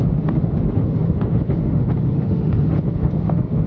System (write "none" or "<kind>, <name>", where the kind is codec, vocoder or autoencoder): autoencoder, DAC-VAE